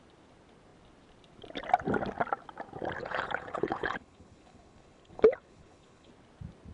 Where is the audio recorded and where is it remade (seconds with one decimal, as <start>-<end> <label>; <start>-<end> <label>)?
0.0-3.0 recorded; 3.0-6.1 remade; 6.1-6.7 recorded